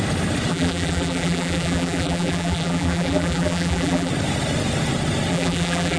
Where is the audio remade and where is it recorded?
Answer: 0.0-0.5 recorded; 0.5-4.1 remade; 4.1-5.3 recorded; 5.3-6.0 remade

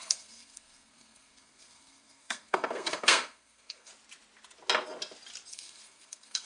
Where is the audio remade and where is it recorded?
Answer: 0.0-3.9 remade; 3.9-5.5 recorded; 5.5-6.5 remade

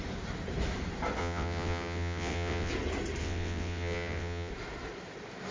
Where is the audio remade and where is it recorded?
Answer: 0.0-1.2 recorded; 1.2-2.7 remade; 2.7-3.2 recorded; 3.2-4.5 remade; 4.5-5.5 recorded

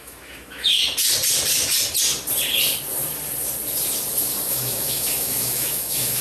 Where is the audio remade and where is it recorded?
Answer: 0.0-0.8 remade; 0.8-4.5 recorded; 4.5-6.2 remade

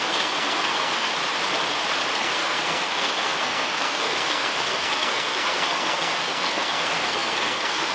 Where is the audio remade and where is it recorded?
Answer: 0.0-1.1 remade; 1.1-2.2 recorded; 2.2-7.9 remade